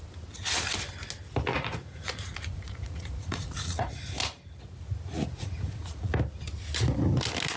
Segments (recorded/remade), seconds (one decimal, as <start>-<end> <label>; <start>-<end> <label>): 0.0-1.5 recorded; 1.5-4.0 remade; 4.0-5.1 recorded; 5.1-6.1 remade; 6.1-7.6 recorded